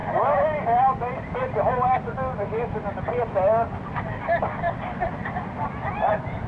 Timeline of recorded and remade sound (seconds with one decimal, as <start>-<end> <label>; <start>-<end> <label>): 0.0-6.5 recorded